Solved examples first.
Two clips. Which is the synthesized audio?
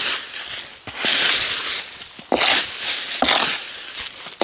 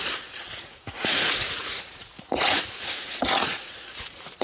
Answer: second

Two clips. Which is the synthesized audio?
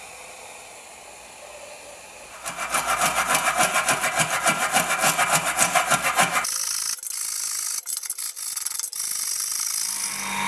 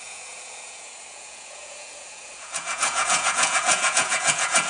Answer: second